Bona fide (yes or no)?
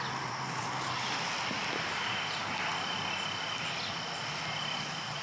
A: yes